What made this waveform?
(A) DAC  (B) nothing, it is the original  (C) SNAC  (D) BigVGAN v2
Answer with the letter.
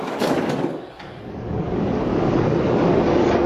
A